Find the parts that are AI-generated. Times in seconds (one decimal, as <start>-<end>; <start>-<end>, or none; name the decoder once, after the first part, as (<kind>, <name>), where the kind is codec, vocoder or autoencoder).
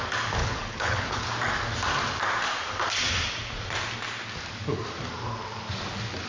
0.4-1.3 (codec, HILCodec)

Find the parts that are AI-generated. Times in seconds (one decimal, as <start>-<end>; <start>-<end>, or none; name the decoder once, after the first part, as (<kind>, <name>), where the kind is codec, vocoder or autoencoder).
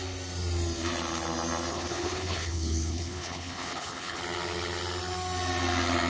1.7-4.2 (codec, HILCodec)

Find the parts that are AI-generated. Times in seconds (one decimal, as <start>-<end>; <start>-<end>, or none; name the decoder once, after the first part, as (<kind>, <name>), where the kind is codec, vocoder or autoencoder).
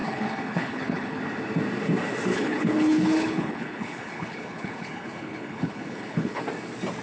0.0-1.2 (codec, HILCodec); 2.3-6.4